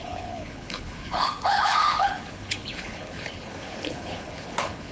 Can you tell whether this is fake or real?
fake